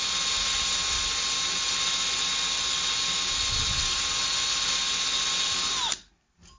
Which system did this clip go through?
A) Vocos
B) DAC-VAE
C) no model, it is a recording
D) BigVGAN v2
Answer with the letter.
C